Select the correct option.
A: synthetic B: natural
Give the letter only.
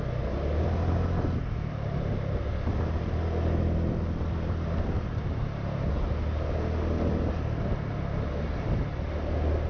B